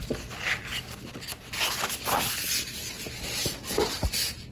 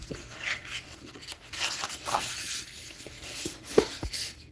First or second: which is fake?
second